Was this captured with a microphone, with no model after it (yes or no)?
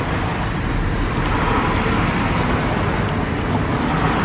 yes